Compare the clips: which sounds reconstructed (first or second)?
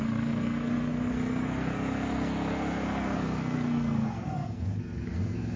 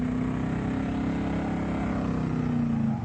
first